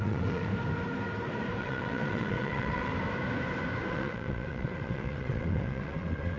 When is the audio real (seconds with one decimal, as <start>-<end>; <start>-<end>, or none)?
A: 0.5-1.6; 2.9-3.9